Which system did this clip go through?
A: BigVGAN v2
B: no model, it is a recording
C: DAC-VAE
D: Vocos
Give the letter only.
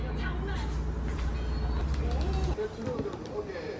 B